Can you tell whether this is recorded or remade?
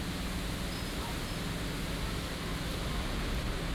recorded